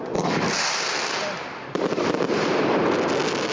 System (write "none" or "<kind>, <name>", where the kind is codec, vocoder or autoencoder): vocoder, BigVGAN v2